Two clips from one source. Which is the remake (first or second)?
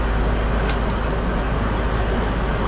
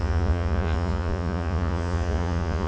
second